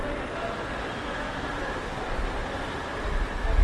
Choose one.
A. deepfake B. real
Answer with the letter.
B